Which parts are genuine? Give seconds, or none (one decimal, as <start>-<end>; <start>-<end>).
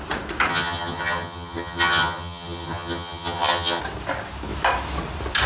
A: 0.0-0.5; 3.8-5.5